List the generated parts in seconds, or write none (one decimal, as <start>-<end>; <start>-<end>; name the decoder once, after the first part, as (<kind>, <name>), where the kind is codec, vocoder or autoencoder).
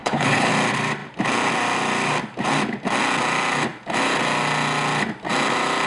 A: 0.0-0.5 (codec, HILCodec)